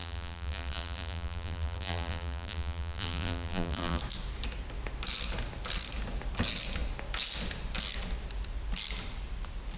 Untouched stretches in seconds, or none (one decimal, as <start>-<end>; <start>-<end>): 4.0-9.8